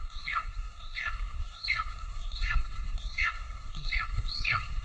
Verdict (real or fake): fake